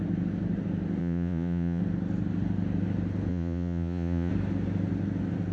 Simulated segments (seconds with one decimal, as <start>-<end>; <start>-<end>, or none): 1.0-1.8; 3.3-4.3